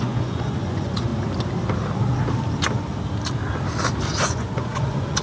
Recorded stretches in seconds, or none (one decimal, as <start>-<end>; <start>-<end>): 1.1-4.2